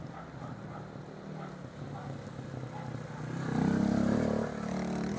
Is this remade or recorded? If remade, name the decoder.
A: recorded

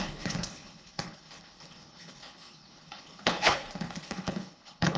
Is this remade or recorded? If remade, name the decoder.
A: remade, codec, HILCodec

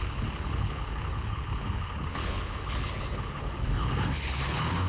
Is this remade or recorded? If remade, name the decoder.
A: remade, codec, HILCodec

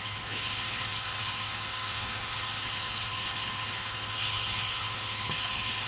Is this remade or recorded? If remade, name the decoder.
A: remade, codec, HILCodec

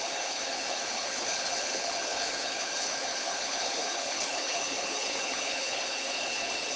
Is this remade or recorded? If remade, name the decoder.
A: remade, codec, HILCodec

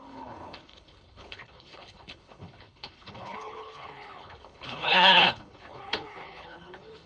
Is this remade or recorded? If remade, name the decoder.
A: remade, codec, HILCodec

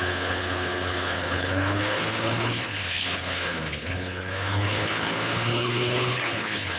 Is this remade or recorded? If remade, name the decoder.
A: remade, codec, HILCodec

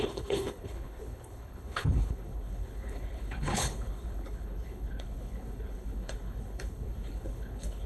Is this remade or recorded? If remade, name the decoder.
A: remade, codec, HILCodec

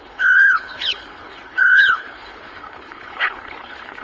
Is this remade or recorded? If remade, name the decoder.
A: remade, codec, HILCodec